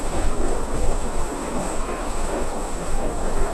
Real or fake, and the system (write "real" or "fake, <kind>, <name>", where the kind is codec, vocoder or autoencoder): fake, codec, DAC